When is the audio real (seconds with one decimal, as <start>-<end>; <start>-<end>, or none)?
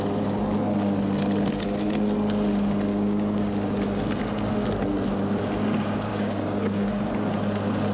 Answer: 0.0-2.9; 3.4-6.1; 7.1-7.9